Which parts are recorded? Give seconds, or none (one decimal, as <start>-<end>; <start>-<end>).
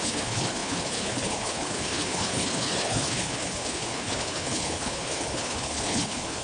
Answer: none